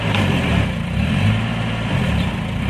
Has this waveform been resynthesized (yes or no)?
no